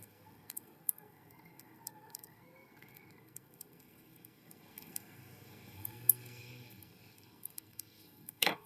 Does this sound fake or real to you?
fake